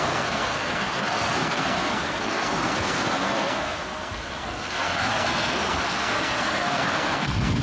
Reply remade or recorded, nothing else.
remade